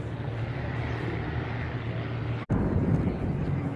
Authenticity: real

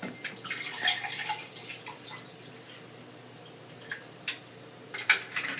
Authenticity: real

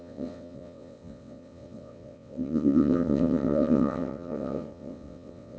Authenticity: fake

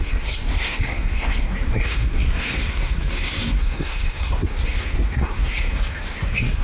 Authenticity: fake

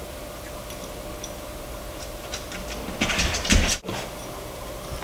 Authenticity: real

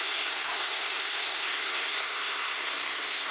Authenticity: fake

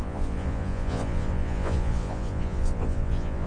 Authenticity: fake